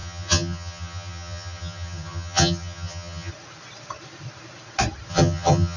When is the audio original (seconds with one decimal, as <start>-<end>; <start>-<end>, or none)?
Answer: 3.3-5.1